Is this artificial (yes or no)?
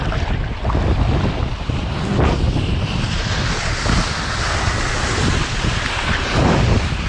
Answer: no